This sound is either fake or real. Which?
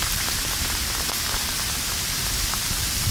fake